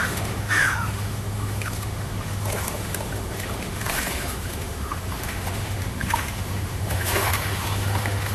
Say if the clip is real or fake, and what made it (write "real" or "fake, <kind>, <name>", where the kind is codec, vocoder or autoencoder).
fake, autoencoder, DAC-VAE